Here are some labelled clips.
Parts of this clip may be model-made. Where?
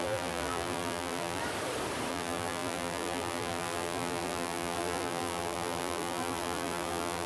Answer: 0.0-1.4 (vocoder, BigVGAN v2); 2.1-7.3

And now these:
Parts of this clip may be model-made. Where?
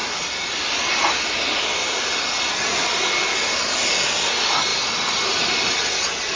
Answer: none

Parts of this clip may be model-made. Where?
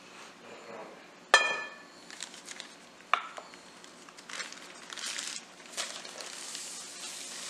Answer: none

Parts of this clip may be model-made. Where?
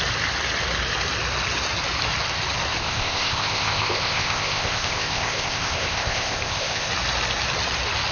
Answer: 2.8-6.9 (codec, ZipCodec)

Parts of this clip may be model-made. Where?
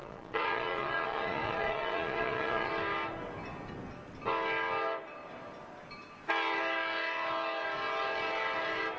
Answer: 0.0-2.7 (vocoder, Vocos)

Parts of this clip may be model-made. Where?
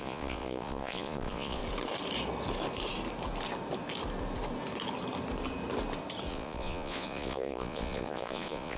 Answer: 0.0-1.6 (vocoder, Vocos); 6.3-8.8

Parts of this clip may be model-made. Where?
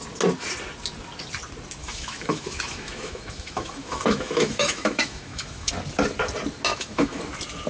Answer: 1.8-5.7 (autoencoder, DAC-VAE); 6.7-7.2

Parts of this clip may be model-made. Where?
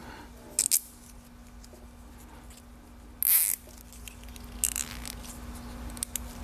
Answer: none